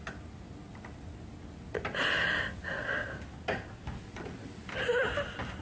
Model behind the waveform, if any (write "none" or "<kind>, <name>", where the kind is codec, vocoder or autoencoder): none